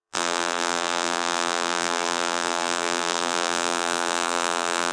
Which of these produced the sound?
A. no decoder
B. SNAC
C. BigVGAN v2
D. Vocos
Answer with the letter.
C